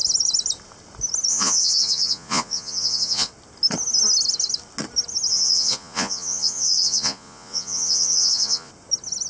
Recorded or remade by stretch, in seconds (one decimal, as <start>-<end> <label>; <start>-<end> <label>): 0.0-1.3 recorded; 1.3-3.3 remade; 3.3-5.3 recorded; 5.3-8.7 remade; 8.7-9.3 recorded